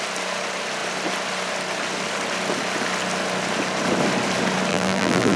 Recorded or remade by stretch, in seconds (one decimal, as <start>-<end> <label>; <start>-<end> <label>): 0.0-4.7 recorded; 4.7-5.4 remade

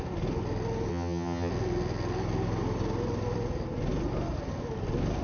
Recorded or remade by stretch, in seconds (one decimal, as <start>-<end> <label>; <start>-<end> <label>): 0.0-0.9 recorded; 0.9-1.5 remade; 1.5-5.2 recorded

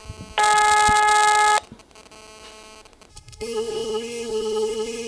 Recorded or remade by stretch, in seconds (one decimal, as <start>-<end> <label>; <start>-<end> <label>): 0.0-3.1 recorded; 3.1-5.1 remade

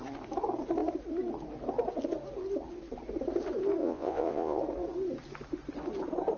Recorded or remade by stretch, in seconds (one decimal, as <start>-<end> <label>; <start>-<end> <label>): 0.0-3.8 recorded; 3.8-4.6 remade; 4.6-6.4 recorded

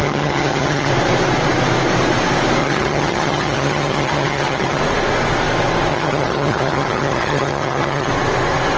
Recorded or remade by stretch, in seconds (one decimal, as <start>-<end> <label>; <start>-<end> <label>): 0.0-0.9 remade; 0.9-2.6 recorded; 2.6-4.8 remade; 4.8-5.9 recorded; 5.9-8.1 remade; 8.1-8.8 recorded

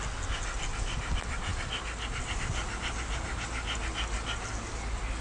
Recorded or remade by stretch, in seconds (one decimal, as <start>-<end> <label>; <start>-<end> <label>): 0.0-5.2 recorded